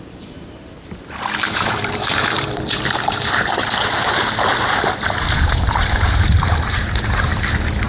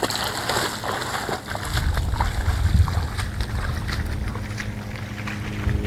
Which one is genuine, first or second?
second